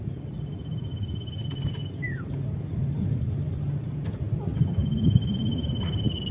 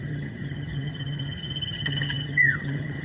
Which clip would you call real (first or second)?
first